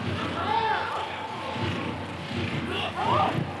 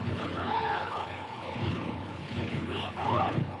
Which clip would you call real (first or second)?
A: first